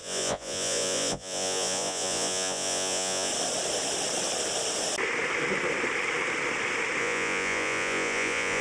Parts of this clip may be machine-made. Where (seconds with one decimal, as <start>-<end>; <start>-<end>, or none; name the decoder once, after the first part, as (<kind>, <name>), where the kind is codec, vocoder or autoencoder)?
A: 0.0-3.3 (vocoder, Vocos); 7.0-8.6